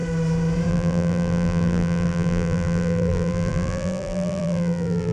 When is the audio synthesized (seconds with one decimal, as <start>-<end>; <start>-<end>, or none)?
0.7-5.1